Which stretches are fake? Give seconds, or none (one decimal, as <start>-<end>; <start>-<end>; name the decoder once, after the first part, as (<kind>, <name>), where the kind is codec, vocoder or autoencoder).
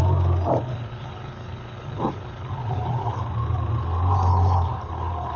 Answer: 0.7-3.2 (codec, HILCodec); 4.3-5.4